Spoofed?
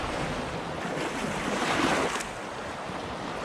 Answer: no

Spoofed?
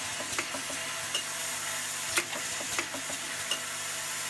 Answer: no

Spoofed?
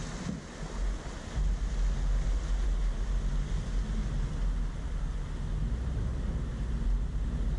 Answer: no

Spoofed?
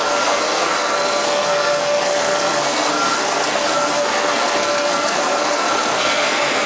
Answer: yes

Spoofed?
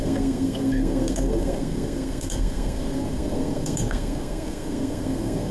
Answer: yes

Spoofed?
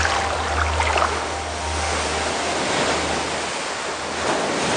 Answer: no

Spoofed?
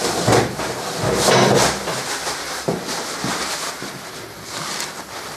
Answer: no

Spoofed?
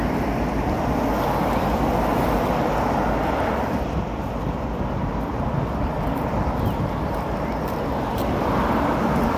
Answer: no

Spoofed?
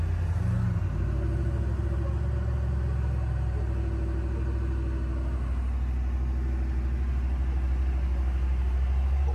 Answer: no